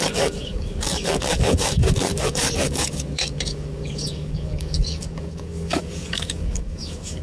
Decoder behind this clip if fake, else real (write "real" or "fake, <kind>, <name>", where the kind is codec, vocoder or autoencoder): fake, codec, DAC